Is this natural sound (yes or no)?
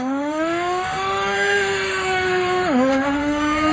no